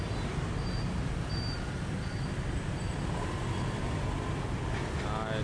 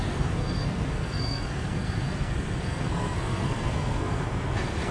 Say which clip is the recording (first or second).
first